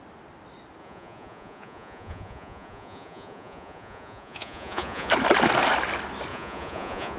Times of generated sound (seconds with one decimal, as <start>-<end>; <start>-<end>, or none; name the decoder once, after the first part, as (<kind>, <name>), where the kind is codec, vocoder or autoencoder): 0.8-5.1 (vocoder, Vocos); 6.3-7.2